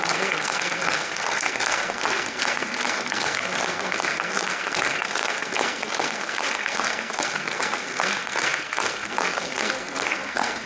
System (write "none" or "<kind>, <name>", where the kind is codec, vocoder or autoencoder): codec, SNAC